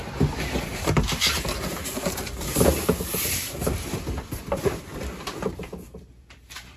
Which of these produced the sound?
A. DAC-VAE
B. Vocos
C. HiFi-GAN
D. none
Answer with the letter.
D